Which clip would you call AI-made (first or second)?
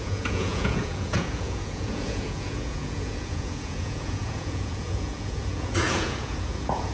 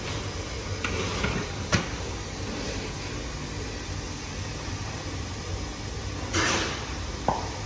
first